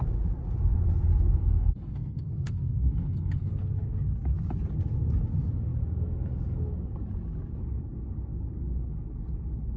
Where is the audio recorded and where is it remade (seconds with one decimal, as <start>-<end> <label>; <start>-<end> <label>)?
0.0-1.4 recorded; 1.4-3.5 remade; 3.5-9.8 recorded

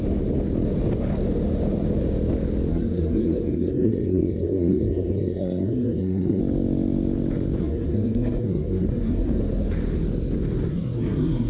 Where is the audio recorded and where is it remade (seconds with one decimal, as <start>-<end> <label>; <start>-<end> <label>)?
0.0-2.7 recorded; 2.7-6.4 remade; 6.4-7.6 recorded; 7.6-9.4 remade; 9.4-10.7 recorded; 10.7-11.5 remade

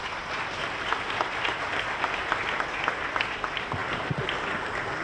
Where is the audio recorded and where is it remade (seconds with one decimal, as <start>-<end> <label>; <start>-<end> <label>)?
0.0-5.0 recorded

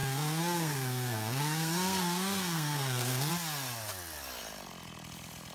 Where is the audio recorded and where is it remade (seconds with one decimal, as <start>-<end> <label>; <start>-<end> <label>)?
0.0-3.3 remade; 3.3-5.5 recorded

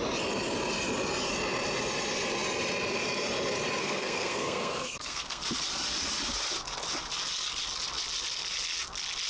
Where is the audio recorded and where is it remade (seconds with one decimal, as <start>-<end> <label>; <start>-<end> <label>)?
0.0-3.8 recorded; 3.8-5.4 remade; 5.4-9.3 recorded

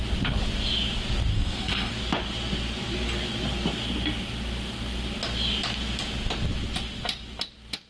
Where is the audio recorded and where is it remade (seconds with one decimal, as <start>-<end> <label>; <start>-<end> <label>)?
0.0-1.3 recorded; 1.3-1.9 remade; 1.9-7.9 recorded